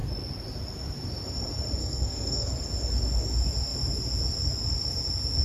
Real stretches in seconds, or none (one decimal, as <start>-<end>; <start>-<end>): 0.0-1.8; 2.5-5.4